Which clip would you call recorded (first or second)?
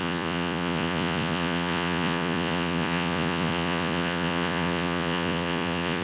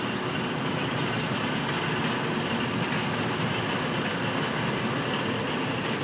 second